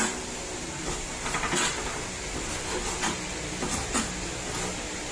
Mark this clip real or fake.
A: real